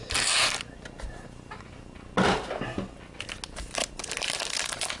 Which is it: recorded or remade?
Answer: recorded